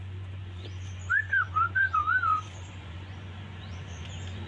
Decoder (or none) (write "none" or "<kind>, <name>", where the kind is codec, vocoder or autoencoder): vocoder, Vocos